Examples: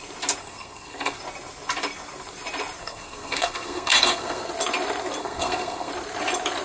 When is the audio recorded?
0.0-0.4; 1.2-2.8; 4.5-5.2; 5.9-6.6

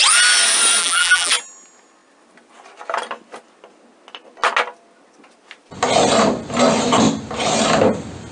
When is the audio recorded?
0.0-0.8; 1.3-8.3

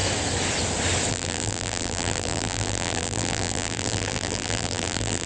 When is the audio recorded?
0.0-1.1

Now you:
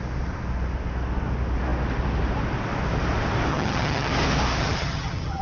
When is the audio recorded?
0.0-3.5; 4.1-4.6

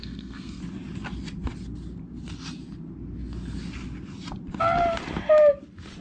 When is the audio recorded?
0.6-6.0

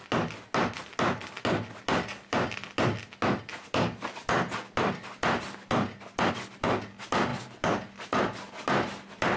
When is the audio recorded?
0.0-9.4

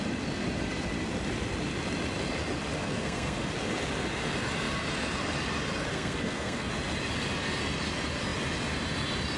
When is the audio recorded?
0.0-2.8; 3.5-5.9; 6.7-9.4

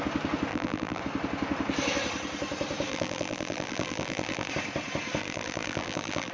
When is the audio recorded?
0.0-0.5; 1.0-2.9; 4.5-5.2